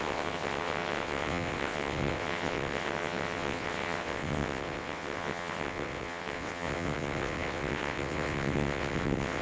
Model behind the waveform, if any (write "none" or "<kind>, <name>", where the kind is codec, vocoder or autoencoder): vocoder, WaveNeXt